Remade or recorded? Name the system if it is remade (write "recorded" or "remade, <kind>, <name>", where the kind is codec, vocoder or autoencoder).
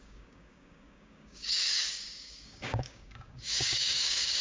remade, codec, DAC